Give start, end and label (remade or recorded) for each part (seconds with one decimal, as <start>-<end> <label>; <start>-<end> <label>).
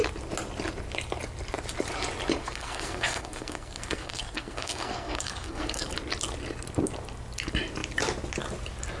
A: 0.0-2.4 recorded; 2.4-5.9 remade; 5.9-9.0 recorded